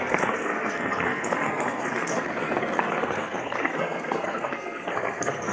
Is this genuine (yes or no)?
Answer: no